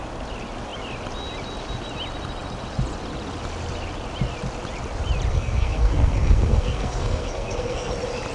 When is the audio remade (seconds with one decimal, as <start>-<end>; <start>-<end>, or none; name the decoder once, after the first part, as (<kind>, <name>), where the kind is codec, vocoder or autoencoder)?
5.3-7.9 (codec, SNAC)